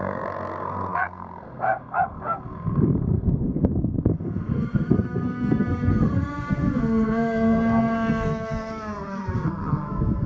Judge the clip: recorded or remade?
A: remade